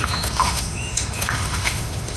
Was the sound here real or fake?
fake